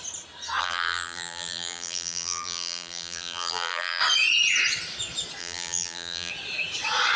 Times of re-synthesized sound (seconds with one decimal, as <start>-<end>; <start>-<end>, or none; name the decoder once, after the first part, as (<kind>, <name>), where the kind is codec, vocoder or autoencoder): 0.6-4.0 (vocoder, BigVGAN v2); 5.4-6.3